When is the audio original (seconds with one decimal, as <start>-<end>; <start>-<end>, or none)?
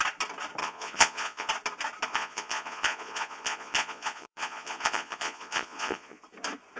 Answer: 0.0-0.6; 1.5-2.1; 6.2-6.8